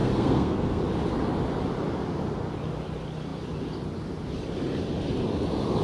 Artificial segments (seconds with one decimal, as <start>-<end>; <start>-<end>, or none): 0.0-0.8